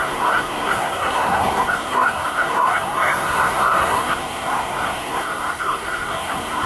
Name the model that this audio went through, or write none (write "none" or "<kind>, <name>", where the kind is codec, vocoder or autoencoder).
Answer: codec, SNAC